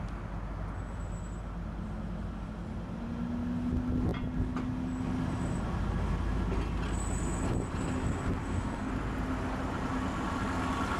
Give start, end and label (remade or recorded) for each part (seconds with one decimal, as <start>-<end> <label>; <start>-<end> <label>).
0.0-8.4 recorded; 8.4-8.9 remade; 8.9-11.0 recorded